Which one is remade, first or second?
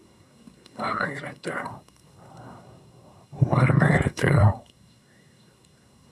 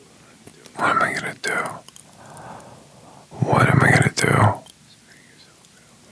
first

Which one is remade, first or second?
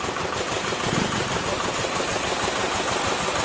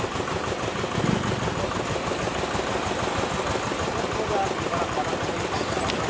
first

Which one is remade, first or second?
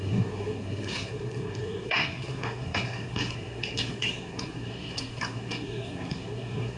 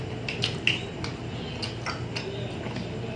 first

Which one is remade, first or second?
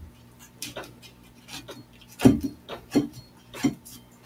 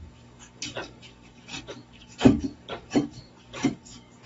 second